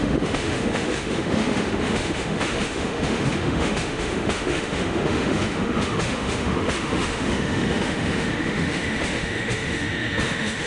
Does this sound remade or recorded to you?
remade